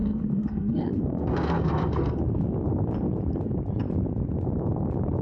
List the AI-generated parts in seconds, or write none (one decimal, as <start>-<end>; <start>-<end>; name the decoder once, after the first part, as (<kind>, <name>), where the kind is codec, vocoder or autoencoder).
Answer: 0.0-2.2 (codec, SNAC)